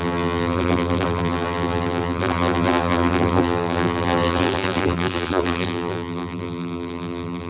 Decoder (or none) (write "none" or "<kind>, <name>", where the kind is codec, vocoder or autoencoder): vocoder, BigVGAN v2